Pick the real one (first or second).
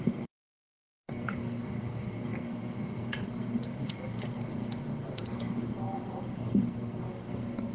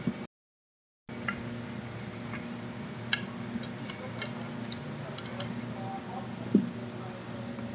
second